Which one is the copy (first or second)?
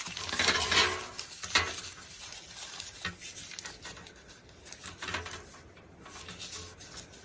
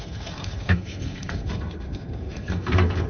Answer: second